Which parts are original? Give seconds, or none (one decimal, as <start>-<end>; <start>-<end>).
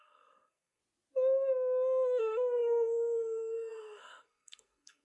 0.8-2.2